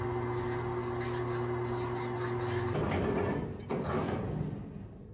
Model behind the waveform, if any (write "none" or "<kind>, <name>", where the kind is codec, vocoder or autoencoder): none